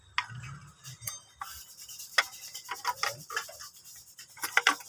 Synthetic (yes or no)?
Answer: no